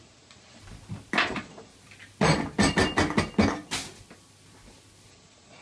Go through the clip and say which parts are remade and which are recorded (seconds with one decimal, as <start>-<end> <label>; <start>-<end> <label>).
0.0-0.6 remade; 0.6-1.2 recorded; 1.2-1.7 remade; 1.7-5.1 recorded; 5.1-5.6 remade